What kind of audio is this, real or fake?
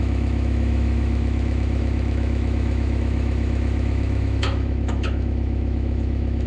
fake